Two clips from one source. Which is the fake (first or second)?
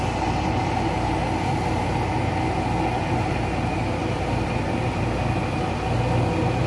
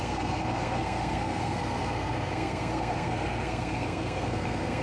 second